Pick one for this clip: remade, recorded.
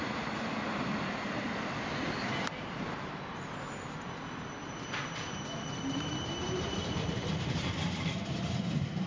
remade